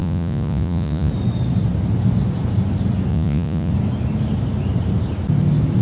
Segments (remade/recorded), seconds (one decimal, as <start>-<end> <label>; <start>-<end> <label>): 0.0-1.1 remade; 1.1-3.1 recorded; 3.1-3.7 remade; 3.7-5.8 recorded